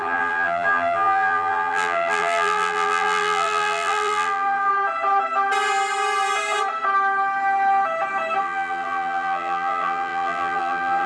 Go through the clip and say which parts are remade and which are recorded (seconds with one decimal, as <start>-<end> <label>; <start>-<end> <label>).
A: 0.0-4.7 remade; 4.7-8.4 recorded; 8.4-11.1 remade